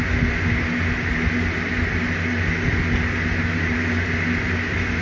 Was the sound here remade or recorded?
recorded